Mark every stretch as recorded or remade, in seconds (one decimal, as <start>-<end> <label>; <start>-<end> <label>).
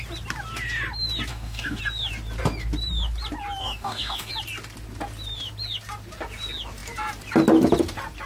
0.0-1.3 recorded; 1.3-1.8 remade; 1.8-3.6 recorded; 3.6-4.3 remade; 4.3-8.3 recorded